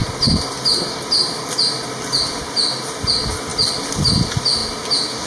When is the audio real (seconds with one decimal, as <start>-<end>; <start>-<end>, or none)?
0.0-5.3